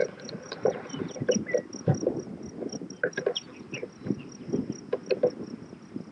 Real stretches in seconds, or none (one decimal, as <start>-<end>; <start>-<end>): 1.2-6.1